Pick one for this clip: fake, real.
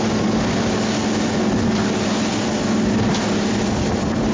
real